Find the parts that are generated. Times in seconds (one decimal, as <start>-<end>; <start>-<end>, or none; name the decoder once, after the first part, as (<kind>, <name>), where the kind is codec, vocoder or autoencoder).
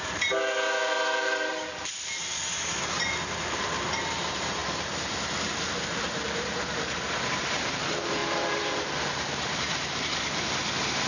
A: 0.0-11.1 (vocoder, BigVGAN v2)